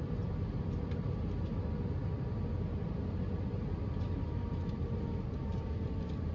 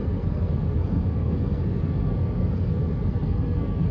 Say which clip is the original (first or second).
first